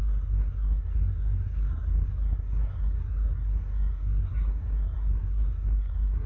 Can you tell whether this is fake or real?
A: fake